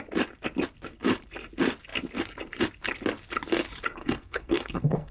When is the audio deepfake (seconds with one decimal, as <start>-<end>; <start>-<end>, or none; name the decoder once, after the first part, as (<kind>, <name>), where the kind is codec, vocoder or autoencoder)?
4.0-5.1 (codec, SNAC)